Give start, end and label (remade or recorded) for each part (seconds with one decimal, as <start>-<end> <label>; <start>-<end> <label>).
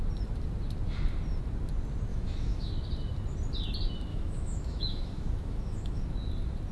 0.0-2.1 recorded; 2.1-2.7 remade; 2.7-4.1 recorded; 4.1-6.0 remade; 6.0-6.7 recorded